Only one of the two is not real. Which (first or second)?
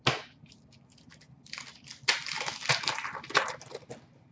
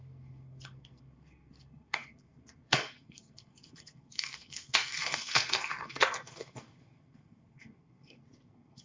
second